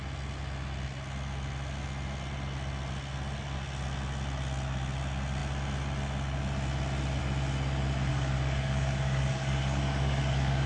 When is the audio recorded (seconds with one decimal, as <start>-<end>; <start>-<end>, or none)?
0.0-8.1